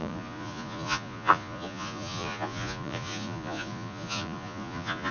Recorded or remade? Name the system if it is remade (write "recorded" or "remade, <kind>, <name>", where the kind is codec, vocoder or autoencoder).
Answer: remade, vocoder, Vocos